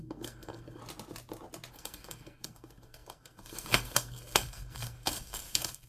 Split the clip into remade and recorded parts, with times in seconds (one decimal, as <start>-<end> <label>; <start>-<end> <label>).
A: 0.0-0.8 remade; 0.8-1.7 recorded; 1.7-5.9 remade